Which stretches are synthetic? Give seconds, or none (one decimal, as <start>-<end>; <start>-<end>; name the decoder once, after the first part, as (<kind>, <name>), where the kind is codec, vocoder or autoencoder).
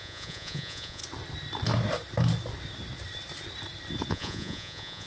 0.0-1.0 (vocoder, Vocos); 4.1-5.1